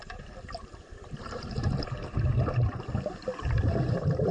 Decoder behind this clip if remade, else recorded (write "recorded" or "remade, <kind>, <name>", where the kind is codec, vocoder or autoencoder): remade, vocoder, BigVGAN v2